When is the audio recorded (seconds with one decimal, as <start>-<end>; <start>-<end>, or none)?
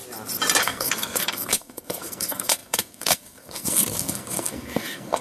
0.0-0.6